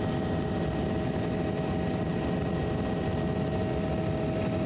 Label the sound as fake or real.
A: real